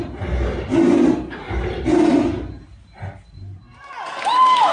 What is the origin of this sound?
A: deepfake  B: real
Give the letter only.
B